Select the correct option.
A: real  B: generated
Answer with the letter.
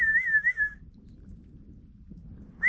A